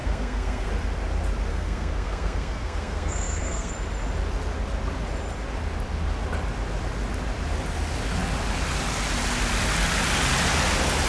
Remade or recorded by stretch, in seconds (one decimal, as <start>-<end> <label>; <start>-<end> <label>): 0.0-0.7 remade; 0.7-1.5 recorded; 1.5-3.7 remade; 3.7-11.1 recorded